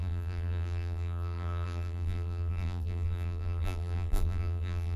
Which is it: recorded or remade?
remade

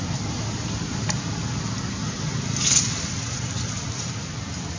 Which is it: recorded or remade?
recorded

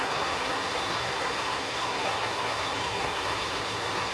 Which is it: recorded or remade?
remade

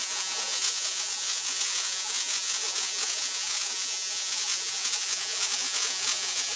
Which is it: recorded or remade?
remade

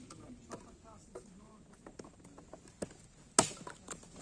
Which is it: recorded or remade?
recorded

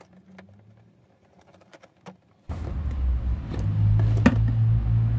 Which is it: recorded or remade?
recorded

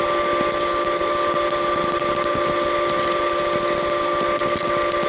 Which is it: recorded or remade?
recorded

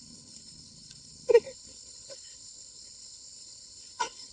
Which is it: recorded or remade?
remade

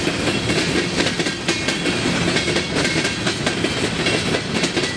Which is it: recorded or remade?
recorded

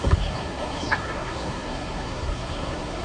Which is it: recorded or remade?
remade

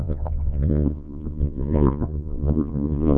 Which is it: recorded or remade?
remade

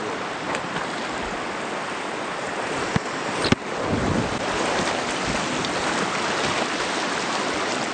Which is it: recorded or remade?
recorded